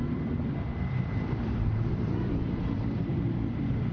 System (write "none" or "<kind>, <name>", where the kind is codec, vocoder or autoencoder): vocoder, BigVGAN v2